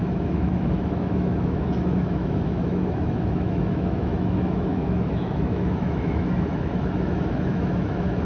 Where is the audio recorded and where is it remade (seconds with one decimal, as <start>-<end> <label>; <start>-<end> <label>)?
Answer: 0.0-8.2 remade